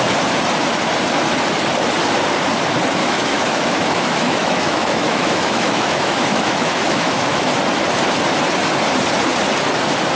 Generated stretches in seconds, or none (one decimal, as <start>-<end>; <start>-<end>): 3.0-7.5